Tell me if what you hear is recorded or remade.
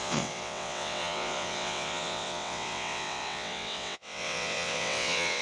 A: remade